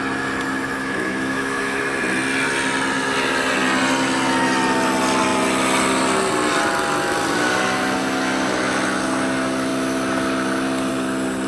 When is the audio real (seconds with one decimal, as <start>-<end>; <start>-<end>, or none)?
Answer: 0.0-0.8; 1.8-11.5